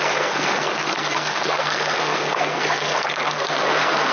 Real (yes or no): no